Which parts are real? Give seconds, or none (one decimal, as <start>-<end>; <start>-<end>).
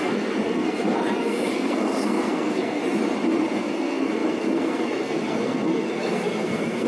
2.8-3.6